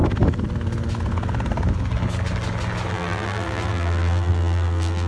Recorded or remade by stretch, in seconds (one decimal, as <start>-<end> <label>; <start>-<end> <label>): 0.0-2.9 recorded; 2.9-5.1 remade